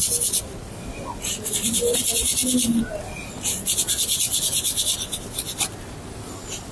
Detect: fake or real real